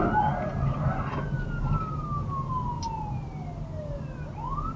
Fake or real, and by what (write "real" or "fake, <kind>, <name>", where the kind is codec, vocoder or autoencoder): real